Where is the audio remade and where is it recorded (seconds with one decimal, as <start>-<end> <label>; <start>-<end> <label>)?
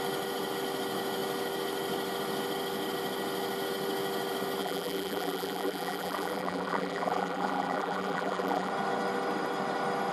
0.0-4.6 recorded; 4.6-8.7 remade; 8.7-10.1 recorded